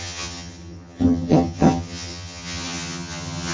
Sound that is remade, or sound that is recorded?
remade